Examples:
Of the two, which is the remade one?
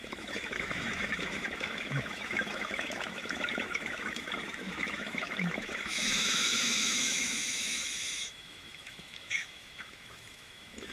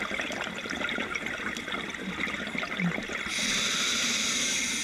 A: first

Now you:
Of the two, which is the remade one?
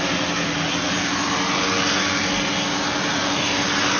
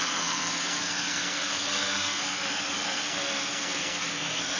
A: second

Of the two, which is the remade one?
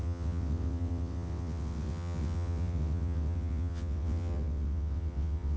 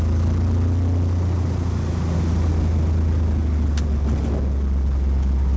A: first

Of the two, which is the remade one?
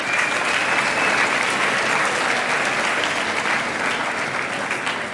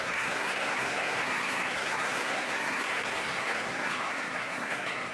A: second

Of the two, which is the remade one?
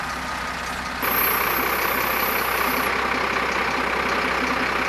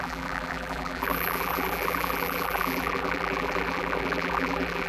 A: second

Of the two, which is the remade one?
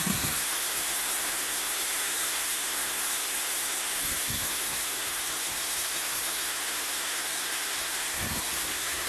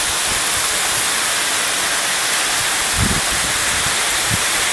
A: first